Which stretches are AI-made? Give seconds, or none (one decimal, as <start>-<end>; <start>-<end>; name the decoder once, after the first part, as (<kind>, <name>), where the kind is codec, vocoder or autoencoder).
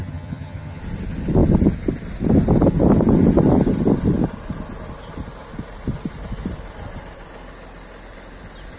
0.0-0.8 (vocoder, HiFi-GAN)